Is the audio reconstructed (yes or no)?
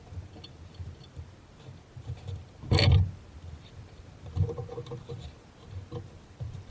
no